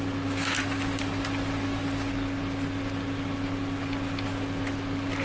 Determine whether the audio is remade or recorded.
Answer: recorded